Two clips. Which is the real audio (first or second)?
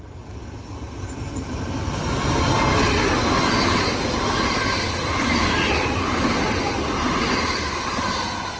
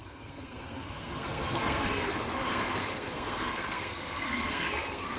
first